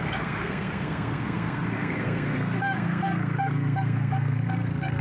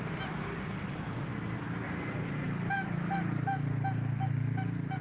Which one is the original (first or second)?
second